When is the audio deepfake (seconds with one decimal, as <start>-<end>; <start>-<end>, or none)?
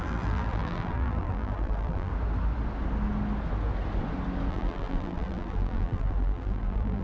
0.0-2.1; 4.5-7.0